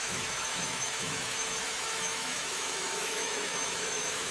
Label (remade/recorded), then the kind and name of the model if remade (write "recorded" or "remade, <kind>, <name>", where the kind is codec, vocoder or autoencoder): remade, autoencoder, DAC-VAE